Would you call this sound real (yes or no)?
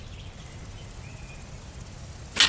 yes